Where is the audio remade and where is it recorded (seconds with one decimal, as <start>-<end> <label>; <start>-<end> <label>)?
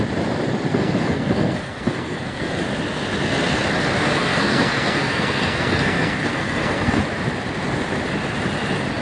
0.0-0.7 recorded; 0.7-2.6 remade; 2.6-4.3 recorded; 4.3-7.0 remade; 7.0-9.0 recorded